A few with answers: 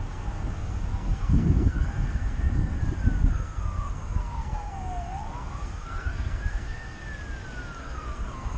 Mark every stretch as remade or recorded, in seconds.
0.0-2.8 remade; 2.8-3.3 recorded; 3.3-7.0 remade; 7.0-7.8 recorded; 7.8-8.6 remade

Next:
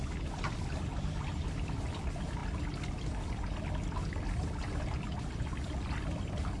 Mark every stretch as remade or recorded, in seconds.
0.0-6.6 recorded